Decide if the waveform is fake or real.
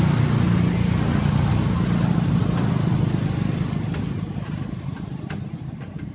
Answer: real